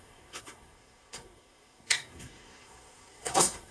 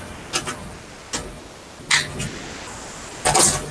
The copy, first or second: first